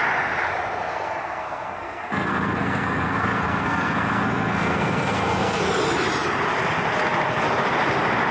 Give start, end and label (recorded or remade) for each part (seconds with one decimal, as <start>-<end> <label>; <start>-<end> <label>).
0.0-0.9 recorded; 0.9-5.6 remade; 5.6-8.3 recorded